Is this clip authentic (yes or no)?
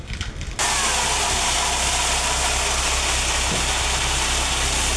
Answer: yes